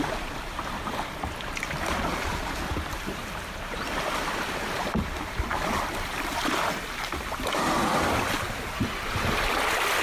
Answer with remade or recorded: recorded